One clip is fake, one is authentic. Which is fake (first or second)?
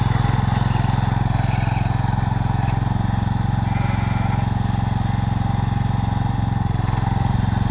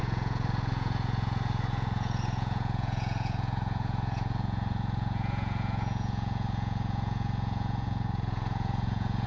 second